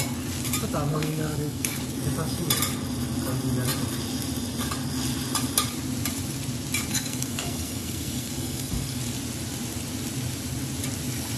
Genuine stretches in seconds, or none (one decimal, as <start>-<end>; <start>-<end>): 0.0-0.9; 1.8-6.9; 9.0-11.4